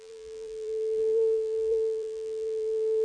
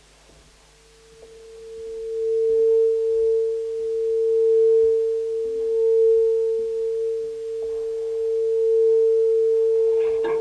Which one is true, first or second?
second